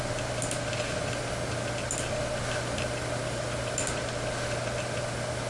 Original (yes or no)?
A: yes